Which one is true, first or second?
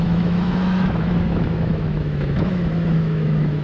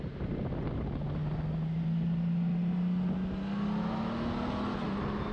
second